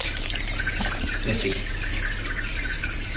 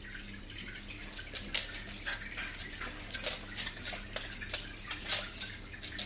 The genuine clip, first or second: second